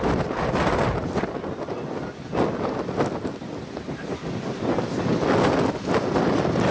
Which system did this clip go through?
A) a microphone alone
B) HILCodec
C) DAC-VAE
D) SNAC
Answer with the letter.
A